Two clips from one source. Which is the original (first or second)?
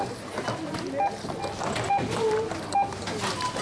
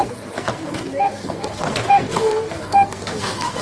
first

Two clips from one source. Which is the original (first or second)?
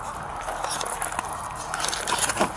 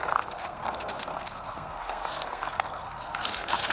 first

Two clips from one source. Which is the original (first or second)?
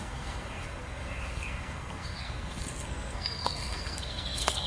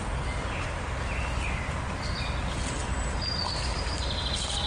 second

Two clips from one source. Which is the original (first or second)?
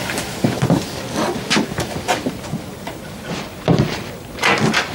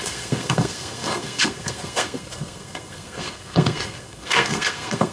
first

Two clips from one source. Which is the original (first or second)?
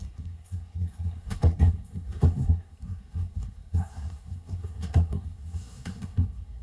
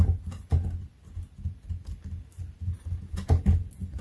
second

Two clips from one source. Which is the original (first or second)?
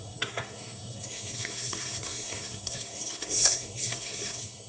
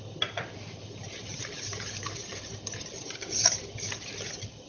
second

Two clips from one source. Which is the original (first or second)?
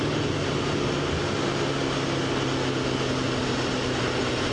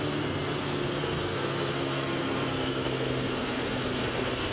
first